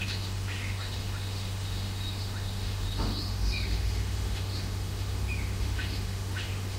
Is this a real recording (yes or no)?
no